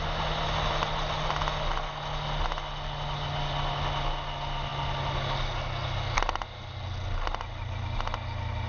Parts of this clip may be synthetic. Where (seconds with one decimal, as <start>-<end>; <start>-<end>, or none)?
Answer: none